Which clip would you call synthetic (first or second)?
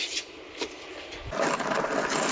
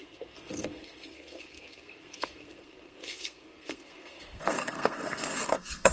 second